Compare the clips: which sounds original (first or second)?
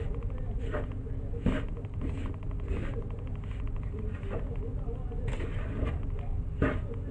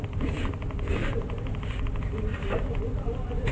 first